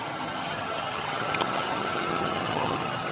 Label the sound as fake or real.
fake